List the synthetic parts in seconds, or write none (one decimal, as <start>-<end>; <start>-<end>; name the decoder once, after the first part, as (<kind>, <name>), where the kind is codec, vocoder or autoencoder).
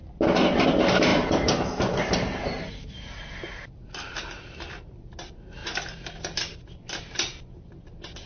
1.1-2.9 (vocoder, BigVGAN v2)